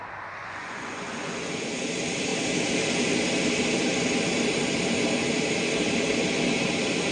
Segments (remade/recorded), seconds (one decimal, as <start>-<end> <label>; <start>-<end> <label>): 0.0-0.4 recorded; 0.4-1.8 remade; 1.8-7.1 recorded